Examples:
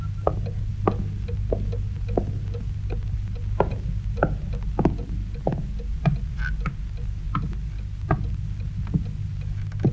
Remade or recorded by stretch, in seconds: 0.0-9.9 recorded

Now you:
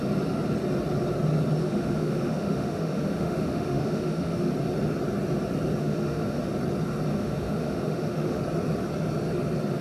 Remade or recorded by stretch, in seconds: 0.0-1.6 recorded; 1.6-4.5 remade; 4.5-5.8 recorded; 5.8-6.4 remade; 6.4-7.1 recorded; 7.1-8.4 remade; 8.4-9.8 recorded

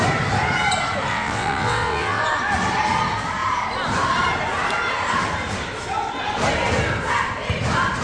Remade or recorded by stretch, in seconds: 0.0-1.1 recorded; 1.1-2.2 remade; 2.2-8.0 recorded

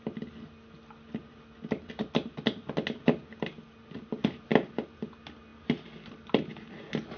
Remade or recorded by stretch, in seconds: 0.0-7.2 recorded

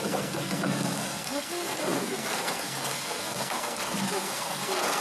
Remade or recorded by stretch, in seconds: 0.0-5.0 remade